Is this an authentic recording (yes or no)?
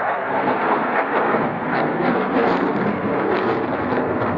no